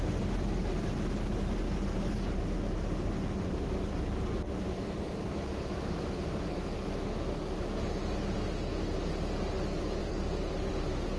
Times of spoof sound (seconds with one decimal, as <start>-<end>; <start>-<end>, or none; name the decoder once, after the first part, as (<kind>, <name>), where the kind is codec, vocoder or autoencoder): 10.0-10.7 (vocoder, BigVGAN v2)